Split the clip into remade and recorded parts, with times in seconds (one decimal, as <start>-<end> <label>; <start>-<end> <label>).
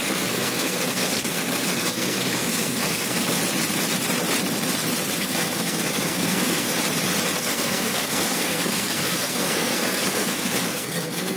0.0-3.4 remade; 3.4-5.2 recorded; 5.2-6.7 remade; 6.7-7.4 recorded; 7.4-11.4 remade